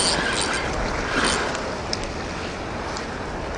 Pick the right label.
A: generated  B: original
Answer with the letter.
B